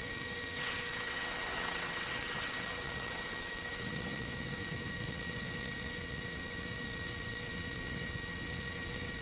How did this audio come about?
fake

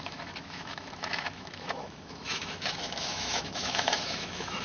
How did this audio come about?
fake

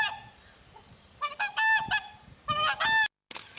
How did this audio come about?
real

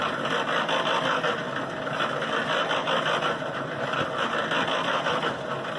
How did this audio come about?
real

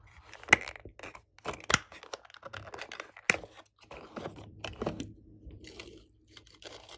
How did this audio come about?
real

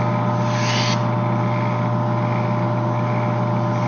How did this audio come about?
real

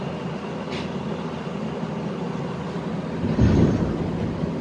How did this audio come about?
real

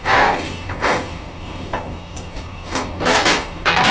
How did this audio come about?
fake